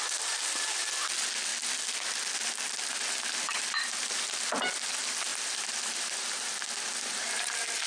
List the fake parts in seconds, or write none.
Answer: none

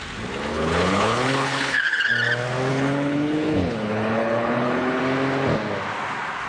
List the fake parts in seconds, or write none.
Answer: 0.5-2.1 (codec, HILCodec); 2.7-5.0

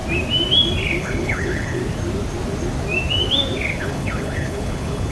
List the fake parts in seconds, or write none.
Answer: 1.0-1.8 (codec, HILCodec); 3.8-5.1